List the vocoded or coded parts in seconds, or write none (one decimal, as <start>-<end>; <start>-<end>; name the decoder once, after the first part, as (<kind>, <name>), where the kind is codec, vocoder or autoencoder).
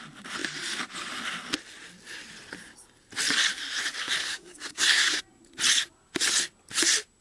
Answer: 4.2-5.2 (codec, SNAC)